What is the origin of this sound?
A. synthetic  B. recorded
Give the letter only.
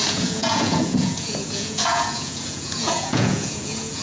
A